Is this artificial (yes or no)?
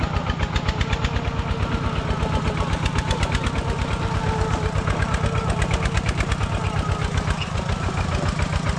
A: no